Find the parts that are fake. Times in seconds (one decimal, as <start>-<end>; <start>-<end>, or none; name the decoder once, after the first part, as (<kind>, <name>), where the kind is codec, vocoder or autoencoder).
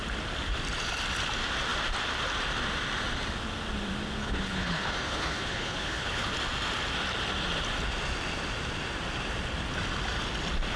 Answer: 4.2-6.3 (codec, HILCodec)